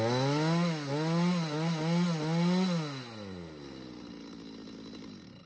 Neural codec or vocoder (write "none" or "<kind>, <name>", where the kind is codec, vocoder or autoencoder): none